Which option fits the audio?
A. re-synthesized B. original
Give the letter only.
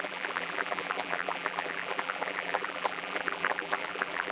A